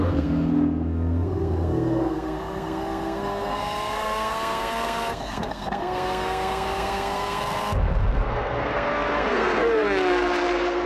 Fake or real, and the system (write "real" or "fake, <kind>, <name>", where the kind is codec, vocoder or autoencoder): fake, codec, SNAC